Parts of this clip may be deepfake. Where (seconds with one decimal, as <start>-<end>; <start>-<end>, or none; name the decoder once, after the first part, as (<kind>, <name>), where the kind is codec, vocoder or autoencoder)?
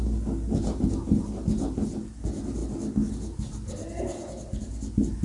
none